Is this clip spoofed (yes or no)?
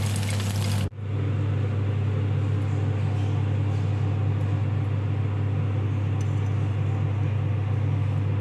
no